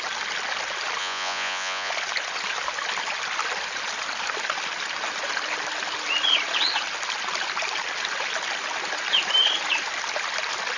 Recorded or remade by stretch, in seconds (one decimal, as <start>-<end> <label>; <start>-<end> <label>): 0.0-1.0 recorded; 1.0-1.9 remade; 1.9-10.8 recorded